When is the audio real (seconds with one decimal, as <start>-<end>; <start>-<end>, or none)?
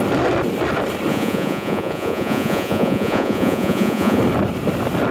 0.0-1.1; 4.2-5.1